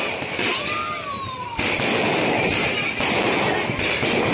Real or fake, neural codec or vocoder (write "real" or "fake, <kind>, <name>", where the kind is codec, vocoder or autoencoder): real